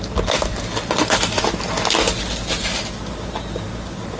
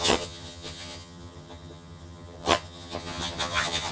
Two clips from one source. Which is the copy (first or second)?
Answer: second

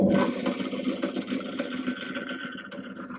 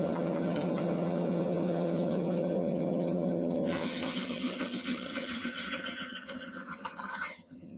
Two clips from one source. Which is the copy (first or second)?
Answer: second